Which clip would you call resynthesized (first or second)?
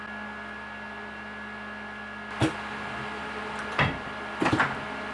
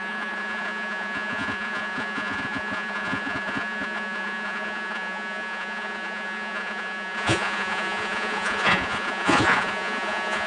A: second